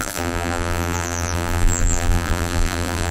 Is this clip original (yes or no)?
no